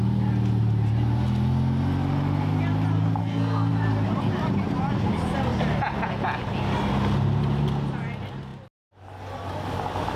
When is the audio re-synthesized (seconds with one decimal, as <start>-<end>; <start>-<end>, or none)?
3.2-3.7